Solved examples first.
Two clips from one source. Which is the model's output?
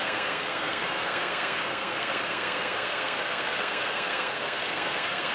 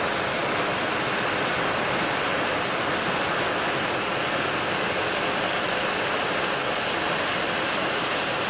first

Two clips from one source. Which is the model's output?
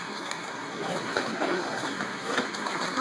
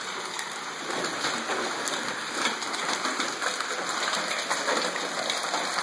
first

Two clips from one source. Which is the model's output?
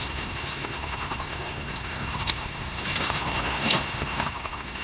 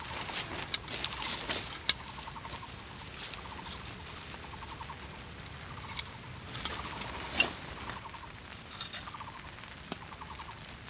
first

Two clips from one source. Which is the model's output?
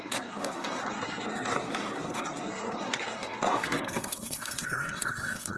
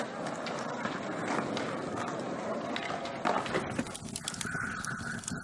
first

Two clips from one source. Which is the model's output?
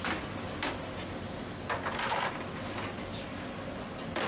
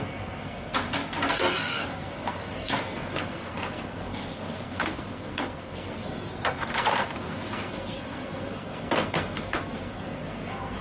second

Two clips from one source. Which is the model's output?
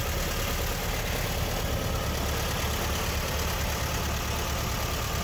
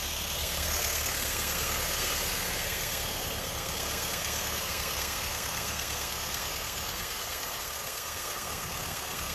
second